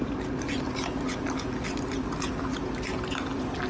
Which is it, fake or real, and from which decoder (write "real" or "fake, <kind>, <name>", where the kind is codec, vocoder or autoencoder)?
real